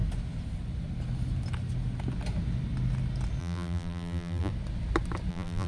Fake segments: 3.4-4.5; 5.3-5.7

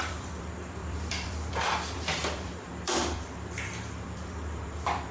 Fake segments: 0.0-5.1

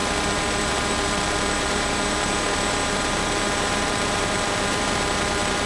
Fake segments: 0.0-5.7